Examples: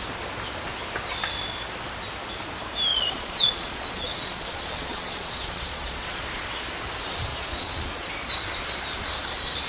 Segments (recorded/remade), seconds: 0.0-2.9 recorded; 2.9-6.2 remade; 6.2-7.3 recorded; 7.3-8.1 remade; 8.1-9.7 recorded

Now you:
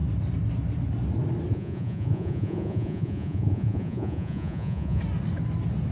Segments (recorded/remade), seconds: 0.0-1.5 recorded; 1.5-5.0 remade; 5.0-5.9 recorded

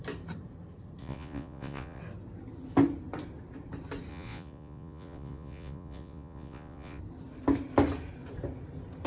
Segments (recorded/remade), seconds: 0.0-1.0 recorded; 1.0-2.0 remade; 2.0-4.1 recorded; 4.1-7.0 remade; 7.0-9.1 recorded

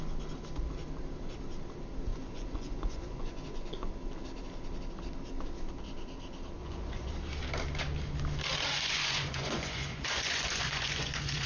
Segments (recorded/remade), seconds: 0.0-2.1 recorded; 2.1-3.9 remade; 3.9-6.6 recorded; 6.6-7.1 remade; 7.1-8.5 recorded; 8.5-11.5 remade

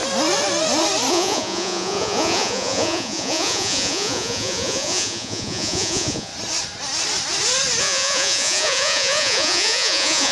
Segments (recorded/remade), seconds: 0.0-1.1 recorded; 1.1-6.3 remade; 6.3-7.8 recorded; 7.8-10.3 remade

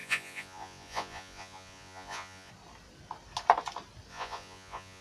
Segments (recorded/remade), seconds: 0.0-2.5 remade; 2.5-4.1 recorded; 4.1-5.0 remade

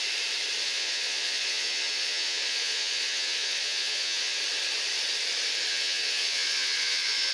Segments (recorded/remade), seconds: 0.0-0.6 recorded; 0.6-4.4 remade; 4.4-5.7 recorded; 5.7-7.3 remade